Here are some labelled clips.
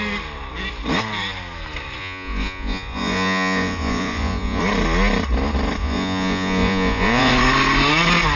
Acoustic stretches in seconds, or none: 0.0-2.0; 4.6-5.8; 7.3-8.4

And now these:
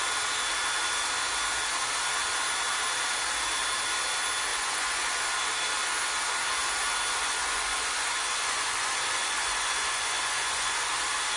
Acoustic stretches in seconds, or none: 0.0-4.5; 5.2-7.2; 10.9-11.4

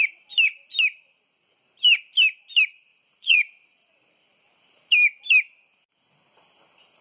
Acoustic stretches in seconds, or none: 0.0-2.9; 3.9-7.0